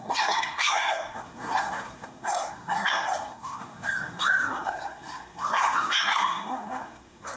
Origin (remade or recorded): remade